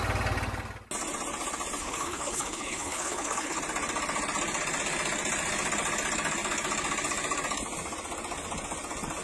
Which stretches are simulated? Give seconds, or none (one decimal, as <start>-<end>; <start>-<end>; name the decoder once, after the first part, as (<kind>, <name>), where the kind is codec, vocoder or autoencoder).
1.8-3.6 (codec, HILCodec)

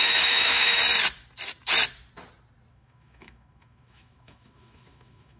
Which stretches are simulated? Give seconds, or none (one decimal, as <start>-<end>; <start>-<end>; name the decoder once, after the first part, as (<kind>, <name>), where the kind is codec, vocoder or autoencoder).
0.0-0.8 (autoencoder, DAC-VAE); 2.7-5.4

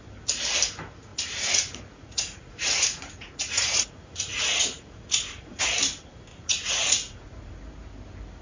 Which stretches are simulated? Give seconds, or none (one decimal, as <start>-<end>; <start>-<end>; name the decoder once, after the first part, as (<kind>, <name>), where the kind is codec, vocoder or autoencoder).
1.1-5.6 (vocoder, Vocos); 6.3-7.5

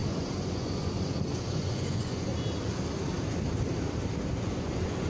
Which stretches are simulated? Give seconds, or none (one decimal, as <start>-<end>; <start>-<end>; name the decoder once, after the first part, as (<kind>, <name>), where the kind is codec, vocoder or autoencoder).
0.0-2.3 (vocoder, Vocos); 4.4-5.1

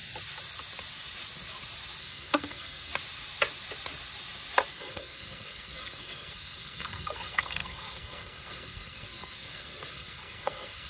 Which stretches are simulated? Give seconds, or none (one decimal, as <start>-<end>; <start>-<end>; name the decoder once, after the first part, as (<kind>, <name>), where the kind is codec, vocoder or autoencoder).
2.0-2.9 (codec, SNAC); 4.7-10.9

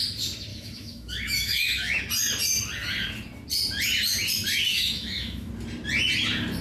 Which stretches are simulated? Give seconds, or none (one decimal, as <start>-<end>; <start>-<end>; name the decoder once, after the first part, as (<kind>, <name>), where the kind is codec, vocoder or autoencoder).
0.5-2.0 (autoencoder, DAC-VAE); 4.7-5.5

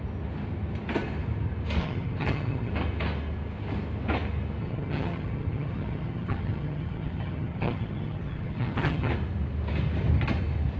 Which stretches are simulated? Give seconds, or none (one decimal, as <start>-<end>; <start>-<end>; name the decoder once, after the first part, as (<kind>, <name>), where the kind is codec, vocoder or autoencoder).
1.8-2.7 (vocoder, HiFi-GAN); 4.6-9.1

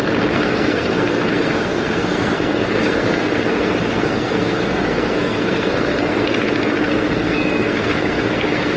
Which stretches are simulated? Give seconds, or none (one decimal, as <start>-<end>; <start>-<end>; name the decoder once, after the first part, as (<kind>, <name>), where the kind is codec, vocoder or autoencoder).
0.0-8.8 (codec, SNAC)